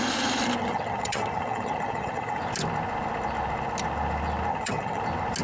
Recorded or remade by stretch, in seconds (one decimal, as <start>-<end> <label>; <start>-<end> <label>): 0.0-0.6 recorded; 0.6-2.4 remade; 2.4-4.5 recorded; 4.5-5.0 remade; 5.0-5.4 recorded